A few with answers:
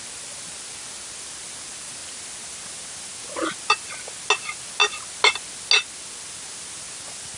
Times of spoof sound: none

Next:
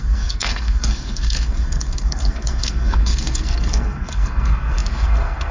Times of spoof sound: 0.0-5.5 (codec, SNAC)

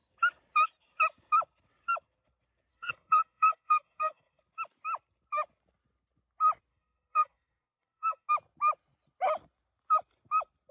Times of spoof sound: 2.7-4.4 (codec, SNAC); 6.7-8.3

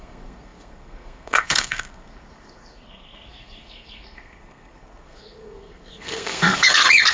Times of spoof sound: 0.0-7.1 (codec, SNAC)

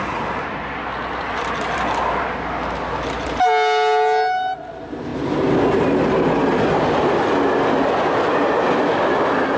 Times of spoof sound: none

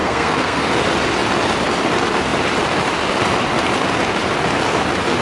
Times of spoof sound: 0.0-0.7 (codec, SNAC)